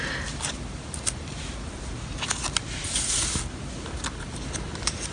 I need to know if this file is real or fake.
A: real